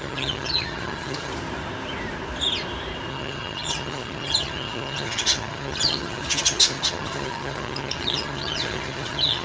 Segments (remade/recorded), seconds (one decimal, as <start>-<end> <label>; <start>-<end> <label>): 0.0-1.3 remade; 1.3-3.1 recorded; 3.1-9.4 remade